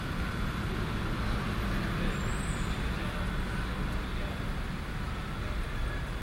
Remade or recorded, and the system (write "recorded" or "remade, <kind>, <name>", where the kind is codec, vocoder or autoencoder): recorded